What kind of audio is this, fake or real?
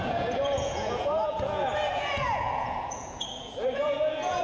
fake